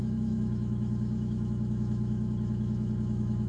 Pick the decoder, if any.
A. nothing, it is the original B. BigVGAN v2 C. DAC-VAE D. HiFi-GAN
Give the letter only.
C